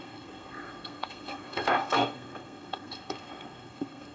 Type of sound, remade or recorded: remade